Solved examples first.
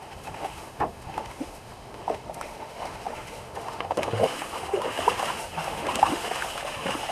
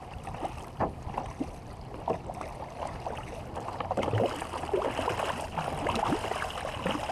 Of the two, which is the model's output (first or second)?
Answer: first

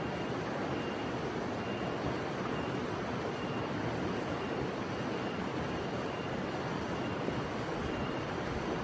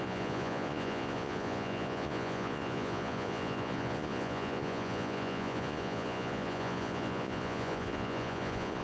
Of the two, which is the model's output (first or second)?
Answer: second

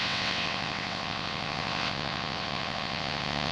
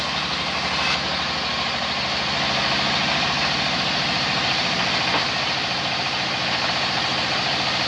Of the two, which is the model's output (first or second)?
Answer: first